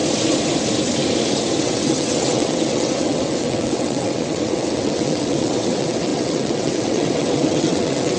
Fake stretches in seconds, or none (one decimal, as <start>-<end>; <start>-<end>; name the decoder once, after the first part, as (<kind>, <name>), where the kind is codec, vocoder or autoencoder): 1.6-8.2 (vocoder, WaveNeXt)